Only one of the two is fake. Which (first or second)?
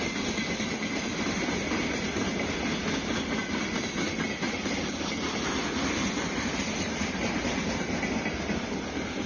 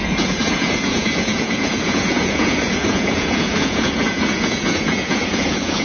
second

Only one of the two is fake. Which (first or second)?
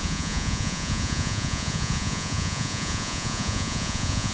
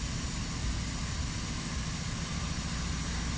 first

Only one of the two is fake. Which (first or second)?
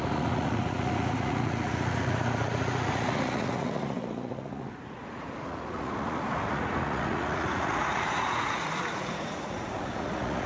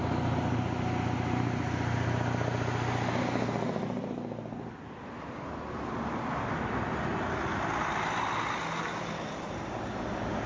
first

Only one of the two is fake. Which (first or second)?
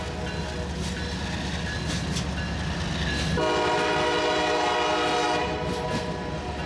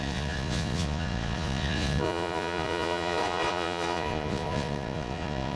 second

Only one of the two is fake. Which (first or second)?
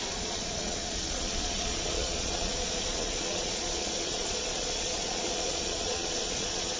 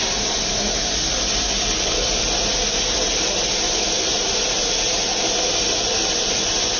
first